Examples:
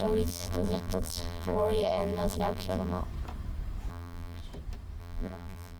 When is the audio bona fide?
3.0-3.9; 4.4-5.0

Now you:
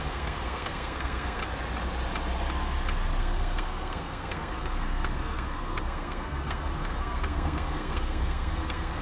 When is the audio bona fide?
1.4-3.2

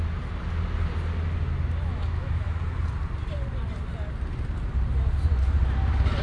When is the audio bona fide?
0.0-1.9; 2.5-6.2

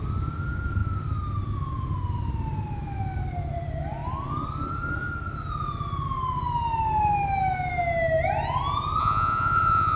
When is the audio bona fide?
0.0-9.0

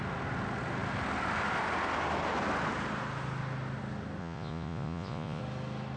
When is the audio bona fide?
0.0-4.2; 5.4-6.0

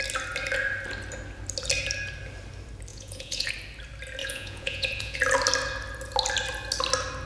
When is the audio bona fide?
0.0-2.9; 3.5-4.2; 5.2-7.3

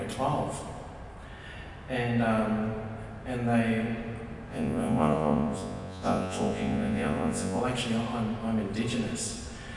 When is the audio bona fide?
0.0-4.5; 7.6-9.8